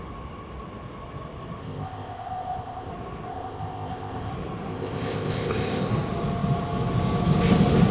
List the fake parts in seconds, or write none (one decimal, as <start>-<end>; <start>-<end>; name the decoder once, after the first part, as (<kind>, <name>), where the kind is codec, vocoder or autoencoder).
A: 1.6-2.9 (codec, ZipCodec); 3.3-4.3; 4.7-5.9